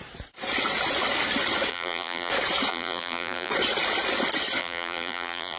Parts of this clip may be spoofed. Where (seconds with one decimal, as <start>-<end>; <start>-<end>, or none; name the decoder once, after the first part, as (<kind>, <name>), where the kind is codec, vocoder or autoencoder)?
1.7-2.3 (vocoder, BigVGAN v2); 2.7-3.5; 4.6-5.6